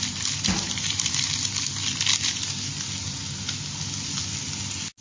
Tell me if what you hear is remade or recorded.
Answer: recorded